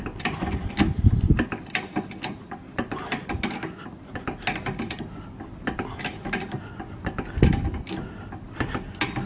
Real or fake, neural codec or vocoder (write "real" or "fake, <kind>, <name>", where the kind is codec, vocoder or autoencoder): real